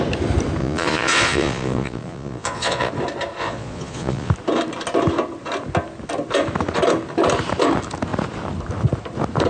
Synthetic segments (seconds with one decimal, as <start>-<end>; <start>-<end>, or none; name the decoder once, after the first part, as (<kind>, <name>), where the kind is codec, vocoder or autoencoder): 0.6-2.9 (vocoder, Vocos); 3.4-4.3